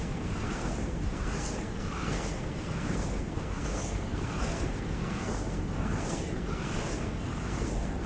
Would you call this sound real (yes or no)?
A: no